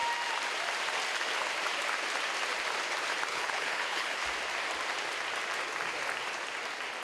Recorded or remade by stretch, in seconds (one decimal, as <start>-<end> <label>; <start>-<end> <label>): 0.0-3.3 recorded; 3.3-4.2 remade; 4.2-7.0 recorded